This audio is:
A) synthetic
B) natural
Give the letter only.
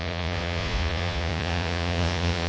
A